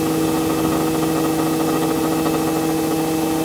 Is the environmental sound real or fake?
real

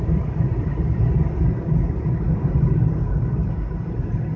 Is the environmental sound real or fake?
real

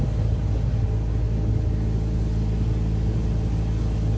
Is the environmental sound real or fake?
real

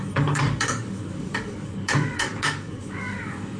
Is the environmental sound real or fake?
fake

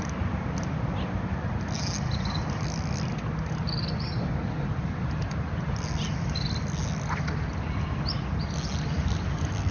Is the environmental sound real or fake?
real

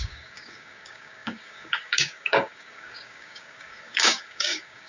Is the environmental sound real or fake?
fake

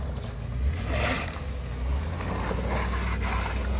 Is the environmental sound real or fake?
real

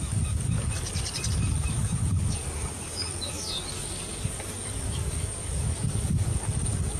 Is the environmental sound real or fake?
fake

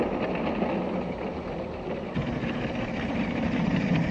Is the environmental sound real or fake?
real